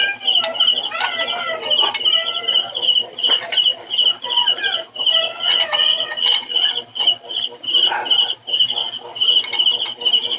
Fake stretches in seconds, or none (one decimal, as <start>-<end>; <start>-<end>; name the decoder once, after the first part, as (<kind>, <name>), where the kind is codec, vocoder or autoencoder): 5.3-6.7 (vocoder, WaveNeXt)